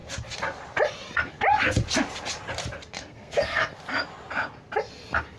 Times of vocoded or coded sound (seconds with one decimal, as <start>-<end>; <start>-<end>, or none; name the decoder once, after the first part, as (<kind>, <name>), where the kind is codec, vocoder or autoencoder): 3.1-3.7 (codec, SNAC)